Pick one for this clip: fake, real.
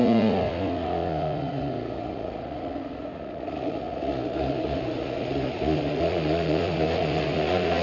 fake